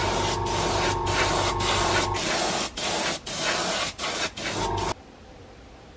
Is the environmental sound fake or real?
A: real